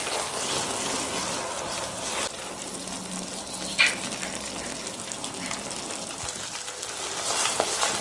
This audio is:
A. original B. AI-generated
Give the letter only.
A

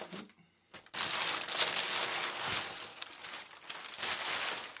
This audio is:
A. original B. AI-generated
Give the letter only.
A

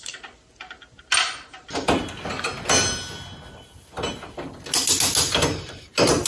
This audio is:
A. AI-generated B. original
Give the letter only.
B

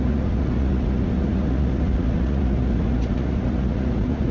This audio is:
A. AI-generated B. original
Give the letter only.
A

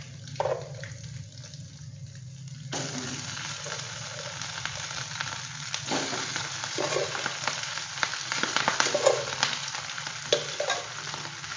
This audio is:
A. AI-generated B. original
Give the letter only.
B